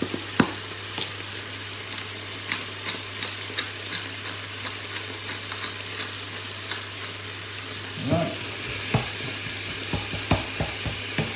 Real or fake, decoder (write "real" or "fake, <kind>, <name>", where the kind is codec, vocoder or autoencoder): real